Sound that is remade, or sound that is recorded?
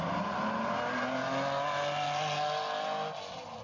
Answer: recorded